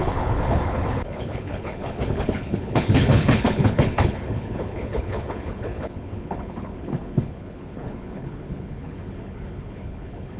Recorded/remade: remade